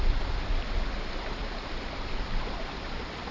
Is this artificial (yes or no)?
no